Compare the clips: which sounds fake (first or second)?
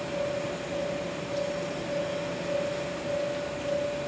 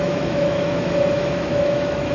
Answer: second